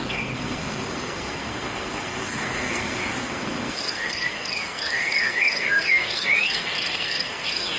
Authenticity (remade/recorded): remade